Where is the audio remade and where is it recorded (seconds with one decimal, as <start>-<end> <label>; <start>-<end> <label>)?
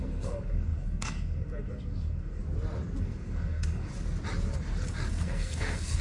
0.0-2.4 remade; 2.4-3.0 recorded; 3.0-3.9 remade; 3.9-5.1 recorded; 5.1-6.0 remade